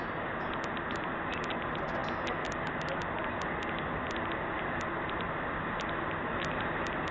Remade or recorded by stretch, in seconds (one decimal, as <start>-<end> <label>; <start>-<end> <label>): 0.0-7.1 recorded